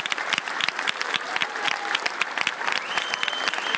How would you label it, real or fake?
fake